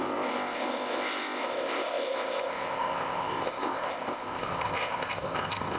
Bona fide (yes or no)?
no